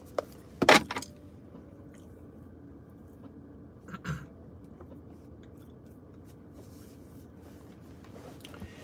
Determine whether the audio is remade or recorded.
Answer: recorded